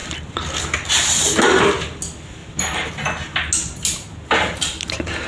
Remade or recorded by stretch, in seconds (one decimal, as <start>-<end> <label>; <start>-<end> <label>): 0.0-5.3 recorded